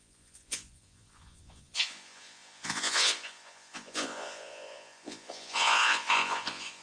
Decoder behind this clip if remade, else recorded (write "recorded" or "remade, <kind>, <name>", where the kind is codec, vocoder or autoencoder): remade, vocoder, Vocos